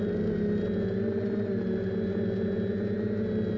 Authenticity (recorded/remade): recorded